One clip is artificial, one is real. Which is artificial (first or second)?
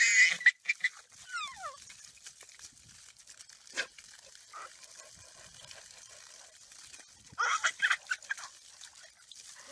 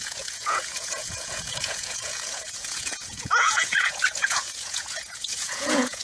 second